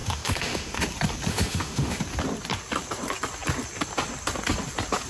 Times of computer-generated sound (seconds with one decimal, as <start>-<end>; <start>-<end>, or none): 0.0-0.8; 1.3-2.0